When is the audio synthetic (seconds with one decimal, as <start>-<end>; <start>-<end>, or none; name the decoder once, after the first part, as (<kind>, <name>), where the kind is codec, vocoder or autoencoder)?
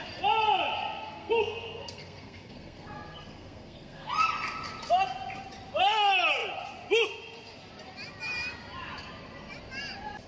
0.9-4.1 (codec, SNAC)